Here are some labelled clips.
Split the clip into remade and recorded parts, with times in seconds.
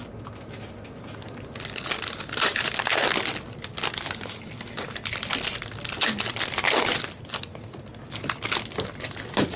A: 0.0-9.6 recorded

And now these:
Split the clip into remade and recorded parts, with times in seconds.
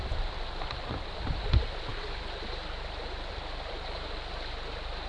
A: 0.0-5.1 recorded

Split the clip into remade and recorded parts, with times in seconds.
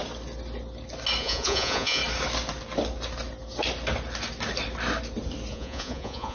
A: 0.0-1.2 recorded; 1.2-2.0 remade; 2.0-5.5 recorded; 5.5-6.3 remade